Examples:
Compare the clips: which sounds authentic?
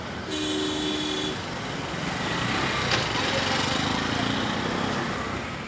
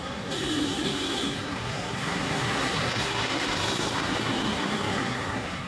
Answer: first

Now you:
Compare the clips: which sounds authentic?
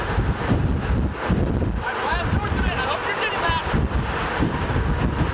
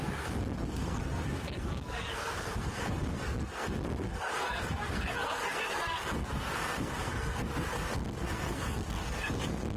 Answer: first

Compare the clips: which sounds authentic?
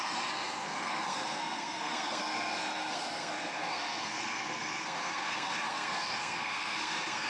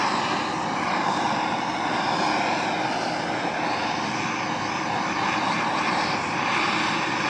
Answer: second